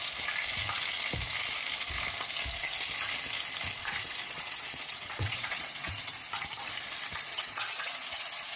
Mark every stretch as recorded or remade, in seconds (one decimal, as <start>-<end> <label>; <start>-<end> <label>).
0.0-3.8 recorded; 3.8-6.1 remade; 6.1-7.3 recorded; 7.3-8.6 remade